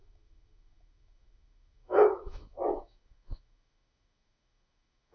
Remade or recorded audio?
remade